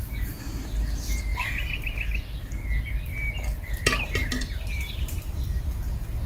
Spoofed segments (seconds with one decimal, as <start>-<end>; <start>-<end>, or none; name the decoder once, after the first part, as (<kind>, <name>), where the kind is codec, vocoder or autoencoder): none